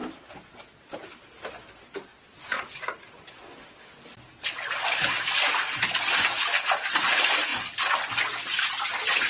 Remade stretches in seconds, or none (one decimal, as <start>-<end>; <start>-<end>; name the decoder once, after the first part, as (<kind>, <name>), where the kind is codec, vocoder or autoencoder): 0.0-1.5 (vocoder, BigVGAN v2); 2.1-3.4; 4.1-4.8